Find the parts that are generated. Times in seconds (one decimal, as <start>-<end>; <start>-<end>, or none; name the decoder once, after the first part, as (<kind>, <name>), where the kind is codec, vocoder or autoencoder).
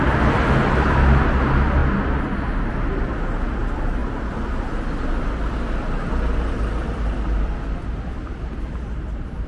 none